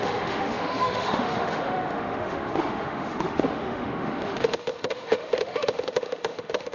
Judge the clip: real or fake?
fake